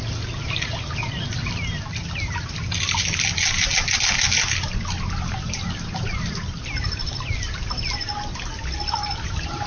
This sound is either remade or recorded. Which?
recorded